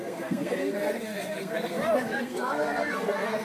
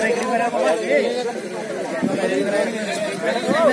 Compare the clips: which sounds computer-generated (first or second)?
first